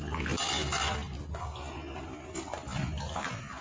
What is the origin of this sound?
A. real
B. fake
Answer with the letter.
A